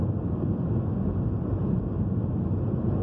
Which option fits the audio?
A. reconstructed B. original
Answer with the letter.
B